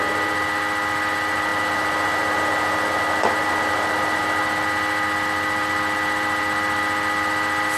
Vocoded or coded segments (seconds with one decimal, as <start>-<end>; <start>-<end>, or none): none